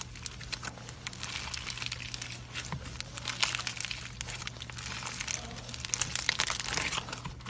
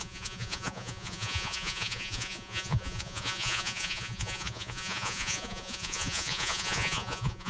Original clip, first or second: first